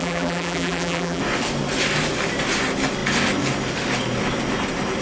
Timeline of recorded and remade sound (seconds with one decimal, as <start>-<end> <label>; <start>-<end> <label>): 0.0-1.2 remade; 1.2-5.0 recorded